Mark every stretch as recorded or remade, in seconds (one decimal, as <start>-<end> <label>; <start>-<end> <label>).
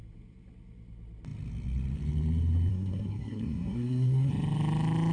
0.0-2.7 recorded; 2.7-4.3 remade; 4.3-5.1 recorded